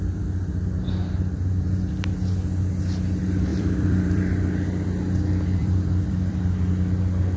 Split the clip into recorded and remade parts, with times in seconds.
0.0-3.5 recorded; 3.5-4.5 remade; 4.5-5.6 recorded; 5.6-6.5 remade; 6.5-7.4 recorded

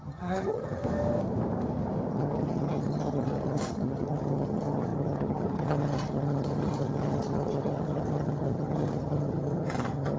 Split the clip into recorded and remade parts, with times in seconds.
0.0-0.8 remade; 0.8-2.1 recorded; 2.1-10.2 remade

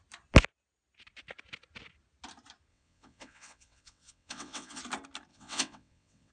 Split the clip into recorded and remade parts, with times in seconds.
0.0-2.7 recorded; 2.7-4.8 remade; 4.8-5.3 recorded; 5.3-6.3 remade

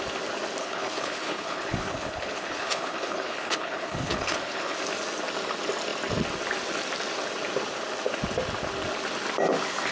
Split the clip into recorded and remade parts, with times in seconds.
0.0-0.6 recorded; 0.6-4.8 remade; 4.8-9.9 recorded